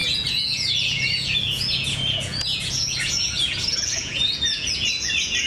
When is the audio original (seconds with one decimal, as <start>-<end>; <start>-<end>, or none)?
none